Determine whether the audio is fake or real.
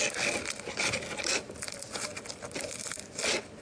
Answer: real